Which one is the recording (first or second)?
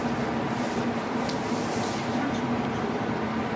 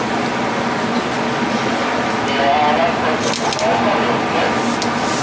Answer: second